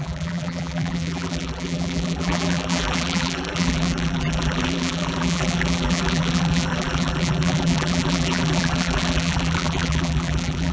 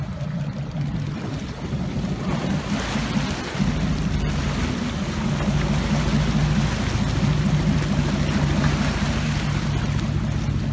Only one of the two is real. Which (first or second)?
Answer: second